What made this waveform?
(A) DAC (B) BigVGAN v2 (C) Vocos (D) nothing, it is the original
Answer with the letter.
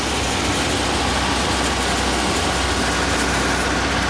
D